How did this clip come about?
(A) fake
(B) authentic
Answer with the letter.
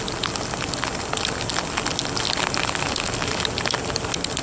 B